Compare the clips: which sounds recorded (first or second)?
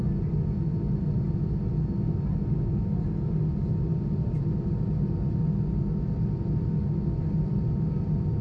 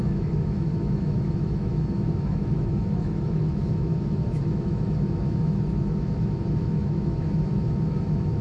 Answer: first